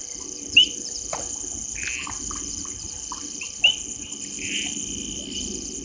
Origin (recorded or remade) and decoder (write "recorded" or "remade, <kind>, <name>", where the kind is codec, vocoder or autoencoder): recorded